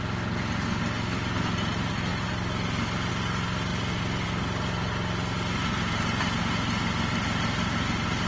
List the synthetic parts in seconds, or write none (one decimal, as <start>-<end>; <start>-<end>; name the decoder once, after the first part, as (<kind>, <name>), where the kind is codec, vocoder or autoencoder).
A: none